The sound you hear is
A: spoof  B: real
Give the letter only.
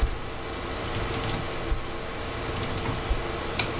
B